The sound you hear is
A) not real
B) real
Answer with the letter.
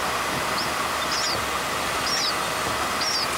B